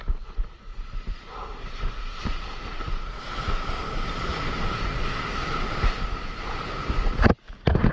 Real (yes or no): no